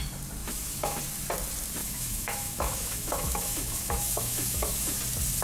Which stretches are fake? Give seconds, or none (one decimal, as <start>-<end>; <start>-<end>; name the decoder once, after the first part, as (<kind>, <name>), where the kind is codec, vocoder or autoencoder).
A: 0.4-1.0 (autoencoder, DAC-VAE); 1.8-5.0